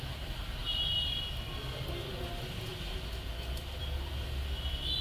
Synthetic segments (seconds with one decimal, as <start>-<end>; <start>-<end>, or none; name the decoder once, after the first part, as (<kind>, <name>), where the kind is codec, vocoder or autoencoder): none